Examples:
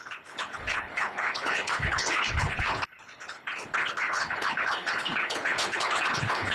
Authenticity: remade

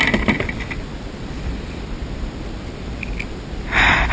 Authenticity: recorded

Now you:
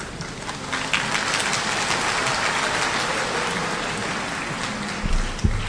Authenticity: recorded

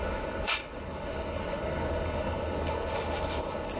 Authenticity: remade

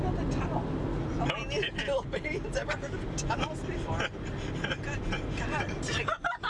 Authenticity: recorded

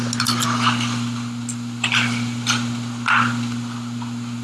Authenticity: recorded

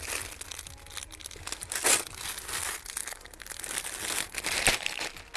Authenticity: recorded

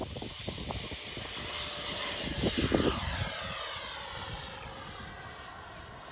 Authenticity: recorded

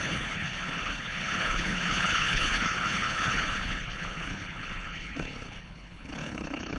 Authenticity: remade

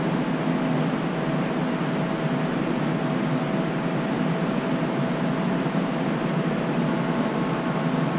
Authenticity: recorded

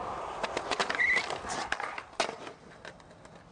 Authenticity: recorded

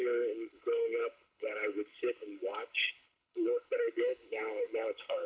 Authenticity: remade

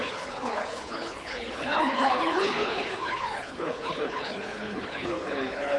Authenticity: remade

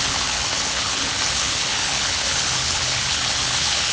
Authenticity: remade